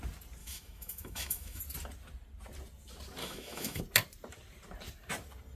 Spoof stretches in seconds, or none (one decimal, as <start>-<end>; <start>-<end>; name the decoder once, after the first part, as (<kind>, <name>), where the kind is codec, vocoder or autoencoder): 0.4-1.6 (autoencoder, DAC-VAE); 3.2-3.8